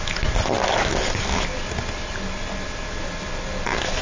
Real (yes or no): yes